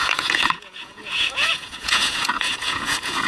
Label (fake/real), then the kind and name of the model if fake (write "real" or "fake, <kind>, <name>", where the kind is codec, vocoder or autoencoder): fake, vocoder, Vocos